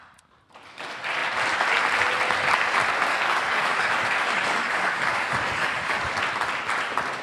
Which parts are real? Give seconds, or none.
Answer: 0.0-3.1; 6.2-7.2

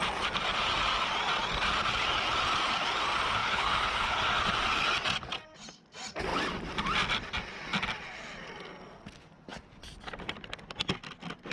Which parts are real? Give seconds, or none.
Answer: 0.0-3.4; 4.2-11.5

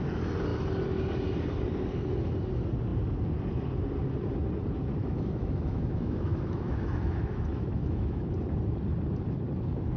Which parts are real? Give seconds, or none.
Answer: 0.0-5.0; 8.3-10.0

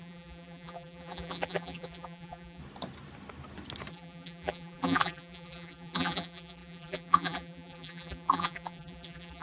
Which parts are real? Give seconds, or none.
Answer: 2.6-3.9

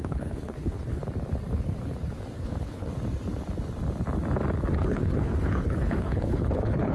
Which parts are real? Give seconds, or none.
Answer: 1.0-2.4; 2.9-4.8

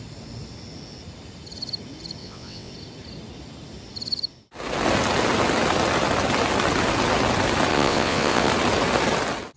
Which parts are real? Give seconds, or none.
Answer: 0.0-2.2; 2.7-7.7; 8.5-9.6